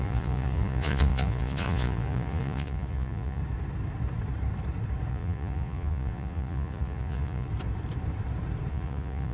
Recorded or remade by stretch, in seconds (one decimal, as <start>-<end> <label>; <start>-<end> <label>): 0.0-3.4 remade; 3.4-5.1 recorded; 5.1-7.5 remade; 7.5-8.7 recorded; 8.7-9.3 remade